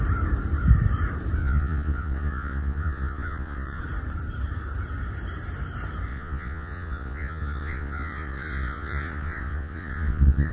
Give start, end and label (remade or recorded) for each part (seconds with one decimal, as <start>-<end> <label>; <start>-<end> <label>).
0.0-1.4 recorded; 1.4-3.8 remade; 3.8-6.1 recorded; 6.1-10.5 remade